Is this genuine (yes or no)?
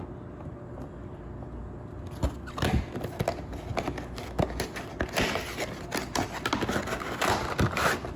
yes